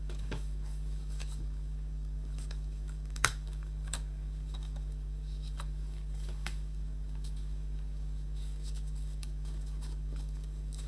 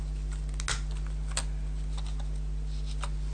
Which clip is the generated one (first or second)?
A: first